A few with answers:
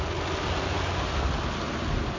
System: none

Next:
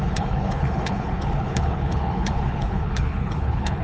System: codec, HILCodec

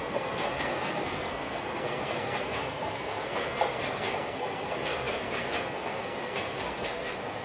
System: codec, SNAC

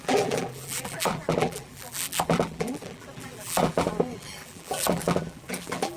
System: vocoder, BigVGAN v2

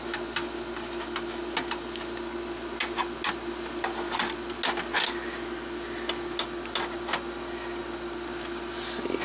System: none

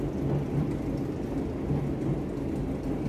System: none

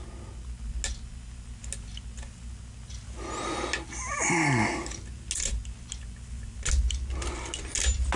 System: none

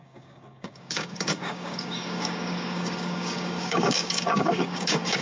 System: codec, DAC